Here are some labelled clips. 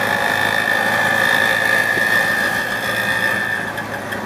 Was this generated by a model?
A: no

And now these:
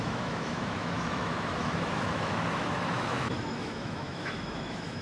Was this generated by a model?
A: yes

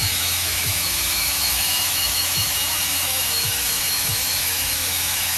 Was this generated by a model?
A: yes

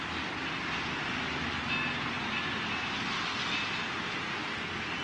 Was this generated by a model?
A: no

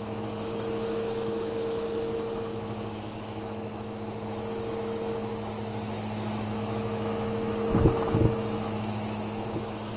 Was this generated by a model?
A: yes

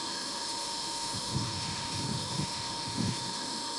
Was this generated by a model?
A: yes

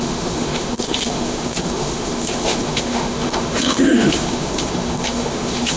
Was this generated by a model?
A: yes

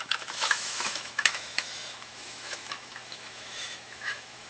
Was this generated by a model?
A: yes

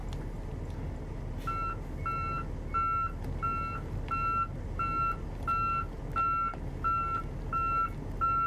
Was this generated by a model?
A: no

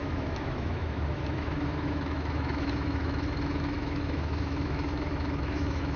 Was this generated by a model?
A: yes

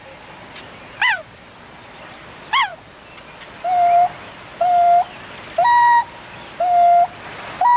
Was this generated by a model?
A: no